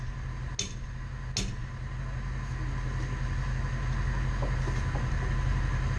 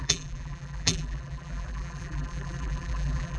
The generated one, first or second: second